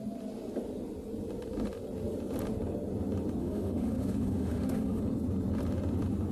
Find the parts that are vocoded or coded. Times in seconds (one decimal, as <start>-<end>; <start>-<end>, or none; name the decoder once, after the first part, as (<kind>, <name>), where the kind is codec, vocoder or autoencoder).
3.4-5.0 (autoencoder, DAC-VAE)